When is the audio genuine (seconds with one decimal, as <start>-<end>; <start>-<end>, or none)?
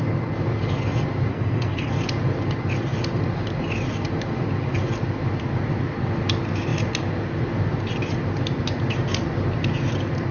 0.0-1.3; 1.9-10.3